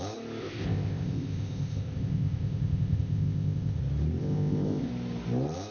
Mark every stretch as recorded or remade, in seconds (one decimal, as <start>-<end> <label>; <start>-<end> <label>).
0.0-0.4 recorded; 0.4-3.8 remade; 3.8-4.2 recorded; 4.2-4.9 remade; 4.9-5.7 recorded

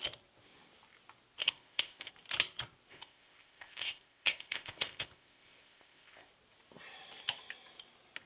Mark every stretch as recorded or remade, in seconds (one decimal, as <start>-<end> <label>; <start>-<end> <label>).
0.0-1.4 recorded; 1.4-2.1 remade; 2.1-2.9 recorded; 2.9-6.3 remade; 6.3-8.3 recorded